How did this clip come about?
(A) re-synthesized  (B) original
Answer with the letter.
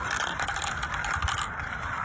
B